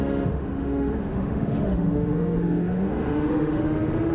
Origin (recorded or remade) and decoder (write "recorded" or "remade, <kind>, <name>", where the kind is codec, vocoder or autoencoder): remade, autoencoder, DAC-VAE